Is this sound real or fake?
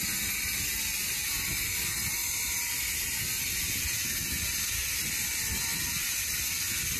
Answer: real